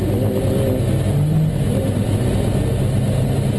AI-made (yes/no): no